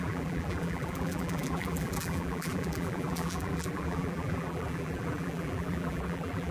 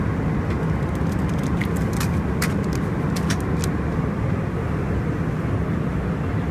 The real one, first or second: second